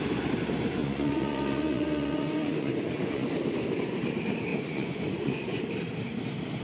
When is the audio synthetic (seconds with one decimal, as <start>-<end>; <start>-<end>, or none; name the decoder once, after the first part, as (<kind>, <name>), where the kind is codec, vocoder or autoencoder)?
0.8-3.3 (vocoder, Vocos); 4.5-5.6